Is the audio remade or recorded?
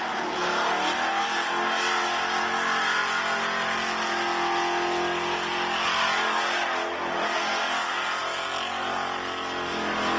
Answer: recorded